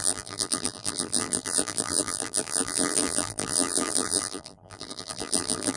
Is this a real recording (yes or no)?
no